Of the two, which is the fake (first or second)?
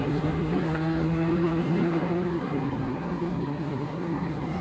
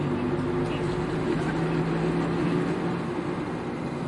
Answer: first